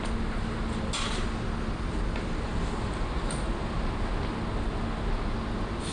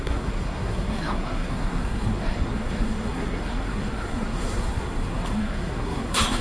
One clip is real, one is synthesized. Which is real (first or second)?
first